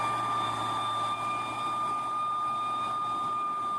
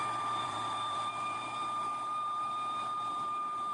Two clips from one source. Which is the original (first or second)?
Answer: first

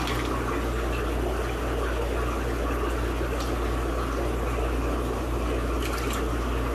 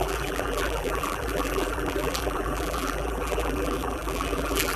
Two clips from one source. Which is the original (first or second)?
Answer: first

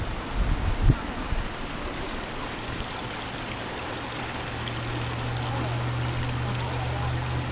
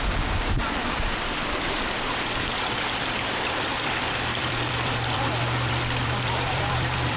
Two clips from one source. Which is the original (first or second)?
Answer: first